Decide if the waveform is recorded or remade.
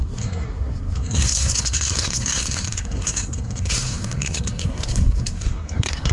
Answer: remade